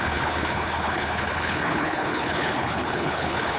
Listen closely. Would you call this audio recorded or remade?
remade